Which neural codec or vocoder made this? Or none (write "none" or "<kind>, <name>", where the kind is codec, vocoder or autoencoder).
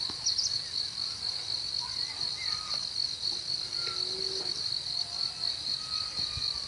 none